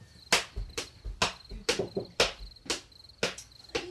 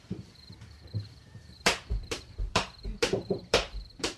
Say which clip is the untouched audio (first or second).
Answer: first